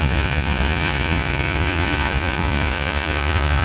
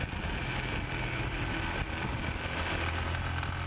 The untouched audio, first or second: second